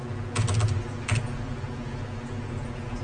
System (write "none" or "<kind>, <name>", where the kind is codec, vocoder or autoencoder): none